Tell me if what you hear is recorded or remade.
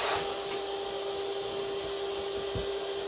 recorded